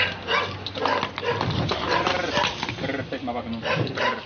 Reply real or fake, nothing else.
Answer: real